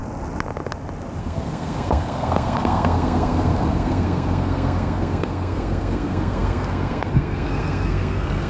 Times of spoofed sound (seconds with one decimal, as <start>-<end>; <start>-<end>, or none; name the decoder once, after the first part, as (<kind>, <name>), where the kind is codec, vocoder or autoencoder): 1.2-8.5 (codec, SNAC)

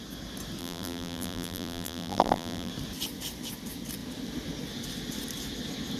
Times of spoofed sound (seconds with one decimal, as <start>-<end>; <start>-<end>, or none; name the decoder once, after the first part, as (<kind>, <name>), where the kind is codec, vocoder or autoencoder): 0.6-2.7 (vocoder, BigVGAN v2)

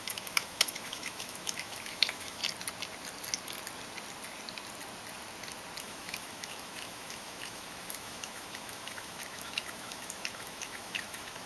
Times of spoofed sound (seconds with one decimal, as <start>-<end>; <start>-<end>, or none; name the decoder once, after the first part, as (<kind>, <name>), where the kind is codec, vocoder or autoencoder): 0.0-2.4 (autoencoder, DAC-VAE); 5.8-11.5